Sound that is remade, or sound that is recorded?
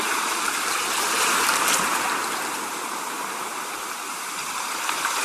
remade